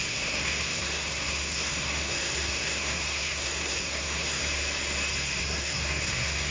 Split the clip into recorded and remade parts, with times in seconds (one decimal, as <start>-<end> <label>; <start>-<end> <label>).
0.0-4.4 remade; 4.4-5.4 recorded; 5.4-6.5 remade